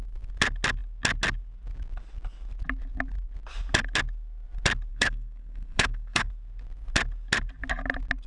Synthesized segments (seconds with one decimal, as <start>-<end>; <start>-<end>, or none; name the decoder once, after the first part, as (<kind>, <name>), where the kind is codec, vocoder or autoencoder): 4.9-6.3 (codec, SNAC)